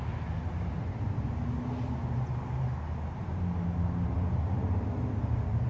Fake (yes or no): no